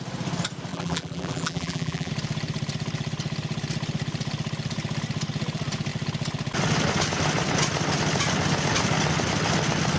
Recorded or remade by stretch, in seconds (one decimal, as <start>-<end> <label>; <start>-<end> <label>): 0.0-0.7 recorded; 0.7-2.1 remade; 2.1-10.0 recorded